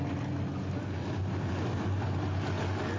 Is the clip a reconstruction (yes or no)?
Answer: no